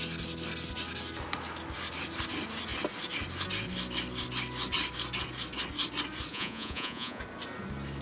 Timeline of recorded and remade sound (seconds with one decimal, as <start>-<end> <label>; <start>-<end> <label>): 0.0-6.3 recorded; 6.3-7.2 remade; 7.2-8.0 recorded

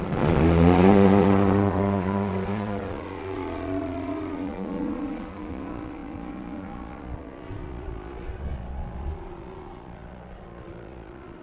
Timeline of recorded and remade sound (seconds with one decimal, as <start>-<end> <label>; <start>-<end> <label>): 0.0-11.4 remade

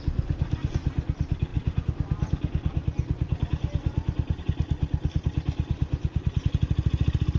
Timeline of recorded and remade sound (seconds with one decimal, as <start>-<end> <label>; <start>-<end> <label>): 0.0-7.4 recorded

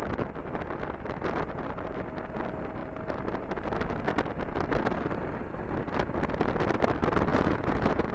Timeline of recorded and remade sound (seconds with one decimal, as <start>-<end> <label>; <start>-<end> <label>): 0.0-7.3 recorded; 7.3-8.1 remade

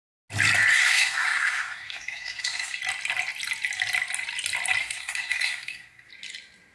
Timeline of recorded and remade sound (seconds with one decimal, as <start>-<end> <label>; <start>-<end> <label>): 0.0-0.7 recorded; 0.7-2.8 remade; 2.8-4.8 recorded; 4.8-6.1 remade; 6.1-6.7 recorded